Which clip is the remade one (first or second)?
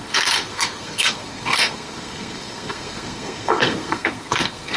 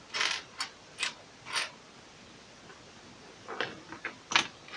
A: first